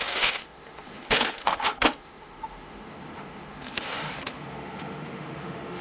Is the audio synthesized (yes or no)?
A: yes